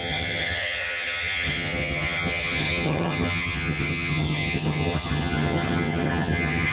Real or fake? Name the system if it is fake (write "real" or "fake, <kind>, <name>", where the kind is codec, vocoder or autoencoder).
fake, vocoder, HiFi-GAN